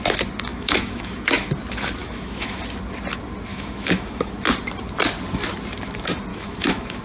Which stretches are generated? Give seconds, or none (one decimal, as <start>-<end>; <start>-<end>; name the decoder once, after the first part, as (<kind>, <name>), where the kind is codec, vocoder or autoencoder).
0.5-1.5 (autoencoder, DAC-VAE); 2.0-2.6; 3.5-4.3; 6.3-7.0